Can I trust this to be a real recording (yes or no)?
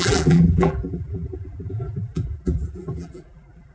no